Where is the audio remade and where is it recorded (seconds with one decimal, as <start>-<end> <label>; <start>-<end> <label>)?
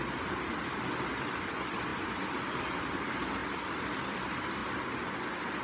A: 0.0-3.4 recorded; 3.4-4.0 remade; 4.0-5.6 recorded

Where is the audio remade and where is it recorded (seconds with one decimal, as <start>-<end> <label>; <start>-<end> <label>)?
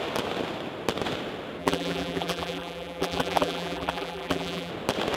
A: 0.0-1.6 recorded; 1.6-4.7 remade; 4.7-5.2 recorded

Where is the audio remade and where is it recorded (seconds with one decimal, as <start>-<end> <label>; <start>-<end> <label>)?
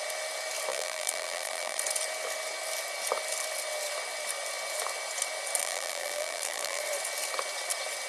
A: 0.0-0.7 recorded; 0.7-1.8 remade; 1.8-5.6 recorded; 5.6-6.8 remade; 6.8-8.1 recorded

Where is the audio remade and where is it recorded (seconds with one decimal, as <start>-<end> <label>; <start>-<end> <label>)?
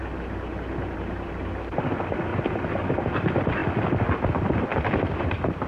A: 0.0-2.3 recorded; 2.3-3.0 remade; 3.0-5.7 recorded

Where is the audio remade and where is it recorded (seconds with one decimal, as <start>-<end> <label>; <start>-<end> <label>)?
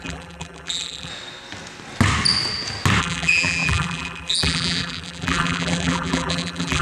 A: 0.0-1.1 remade; 1.1-3.0 recorded; 3.0-6.8 remade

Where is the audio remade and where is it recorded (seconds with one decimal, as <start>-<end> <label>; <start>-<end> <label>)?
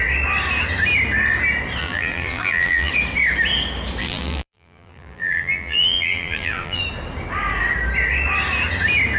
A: 0.0-1.8 recorded; 1.8-2.9 remade; 2.9-4.0 recorded; 4.0-6.8 remade; 6.8-9.2 recorded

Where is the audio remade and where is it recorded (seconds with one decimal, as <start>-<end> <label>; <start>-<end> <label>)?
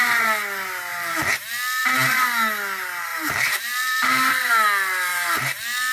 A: 0.0-3.1 recorded; 3.1-4.5 remade; 4.5-5.9 recorded